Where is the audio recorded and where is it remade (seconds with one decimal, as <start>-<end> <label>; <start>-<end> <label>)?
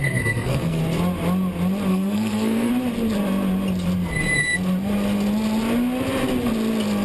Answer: 0.0-0.8 remade; 0.8-1.9 recorded; 1.9-2.7 remade; 2.7-7.0 recorded